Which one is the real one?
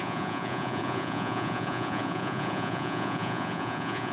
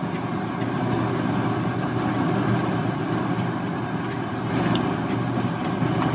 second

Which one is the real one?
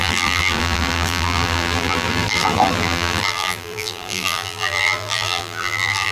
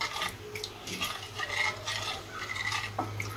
second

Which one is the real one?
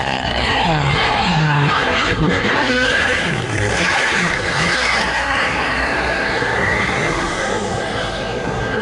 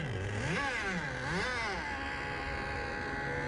second